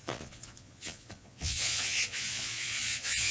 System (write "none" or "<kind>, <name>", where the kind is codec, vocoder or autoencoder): vocoder, Vocos